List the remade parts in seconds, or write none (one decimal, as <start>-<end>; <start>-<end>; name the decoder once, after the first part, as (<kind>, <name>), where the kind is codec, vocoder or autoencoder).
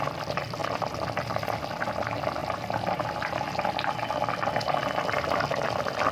2.4-3.3 (vocoder, BigVGAN v2)